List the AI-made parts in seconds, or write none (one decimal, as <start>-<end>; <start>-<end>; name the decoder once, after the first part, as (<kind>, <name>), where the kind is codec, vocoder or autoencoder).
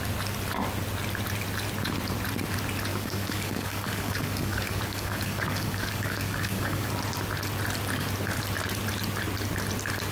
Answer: 2.9-6.9 (codec, DAC)